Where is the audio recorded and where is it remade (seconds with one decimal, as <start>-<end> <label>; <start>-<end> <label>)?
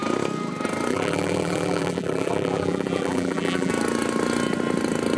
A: 0.0-0.9 recorded; 0.9-3.7 remade; 3.7-5.2 recorded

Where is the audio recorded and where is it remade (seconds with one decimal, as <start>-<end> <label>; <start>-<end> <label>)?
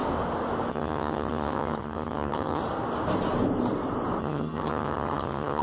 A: 0.0-0.7 recorded; 0.7-2.6 remade; 2.6-4.2 recorded; 4.2-5.6 remade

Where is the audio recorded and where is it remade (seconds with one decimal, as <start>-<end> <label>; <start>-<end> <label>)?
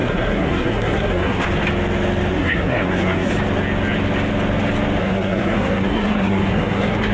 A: 0.0-1.4 remade; 1.4-2.3 recorded; 2.3-3.3 remade; 3.3-5.0 recorded; 5.0-7.1 remade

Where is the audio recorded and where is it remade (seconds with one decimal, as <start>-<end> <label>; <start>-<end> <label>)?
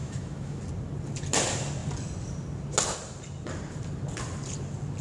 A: 0.0-0.6 remade; 0.6-5.0 recorded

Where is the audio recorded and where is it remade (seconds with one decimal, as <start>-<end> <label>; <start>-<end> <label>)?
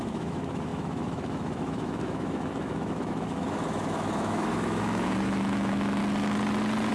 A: 0.0-6.0 remade; 6.0-6.9 recorded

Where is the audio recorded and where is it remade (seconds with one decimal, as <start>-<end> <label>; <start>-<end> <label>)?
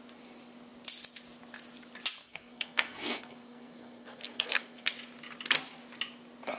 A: 0.0-2.2 recorded; 2.2-4.9 remade; 4.9-6.6 recorded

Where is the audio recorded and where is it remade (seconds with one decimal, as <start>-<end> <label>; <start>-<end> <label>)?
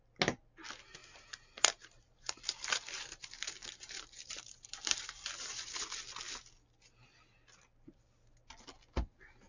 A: 0.0-1.0 recorded; 1.0-5.8 remade; 5.8-9.5 recorded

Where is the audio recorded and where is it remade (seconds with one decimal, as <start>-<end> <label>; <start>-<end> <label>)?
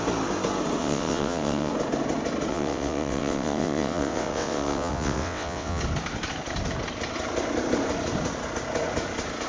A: 0.0-0.8 recorded; 0.8-1.7 remade; 1.7-2.5 recorded; 2.5-5.8 remade; 5.8-9.5 recorded